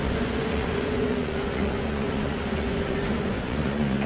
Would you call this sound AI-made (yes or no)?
yes